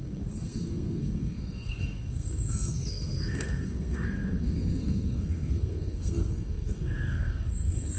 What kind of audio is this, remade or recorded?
remade